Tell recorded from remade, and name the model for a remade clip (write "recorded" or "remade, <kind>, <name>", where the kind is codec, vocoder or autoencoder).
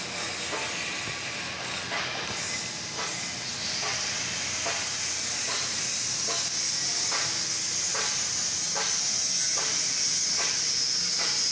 recorded